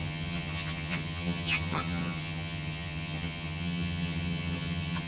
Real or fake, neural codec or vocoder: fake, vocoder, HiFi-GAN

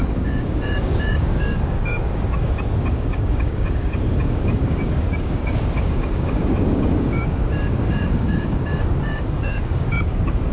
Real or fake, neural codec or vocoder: fake, codec, DAC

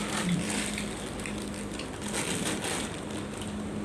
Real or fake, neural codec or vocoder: real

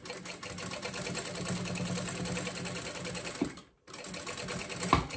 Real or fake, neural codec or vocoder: real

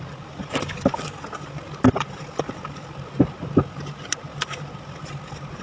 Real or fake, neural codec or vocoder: real